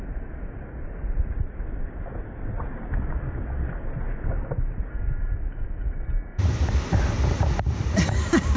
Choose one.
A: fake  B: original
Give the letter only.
B